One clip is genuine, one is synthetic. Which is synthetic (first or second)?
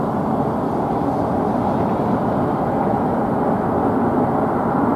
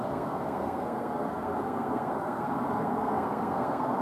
second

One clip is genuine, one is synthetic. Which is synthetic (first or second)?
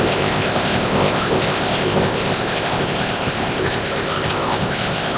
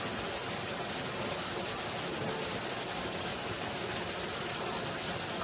first